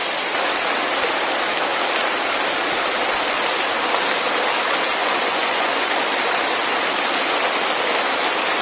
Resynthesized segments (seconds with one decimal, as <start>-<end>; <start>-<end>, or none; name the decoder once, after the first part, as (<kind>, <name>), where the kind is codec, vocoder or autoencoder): 5.0-5.9 (vocoder, Vocos)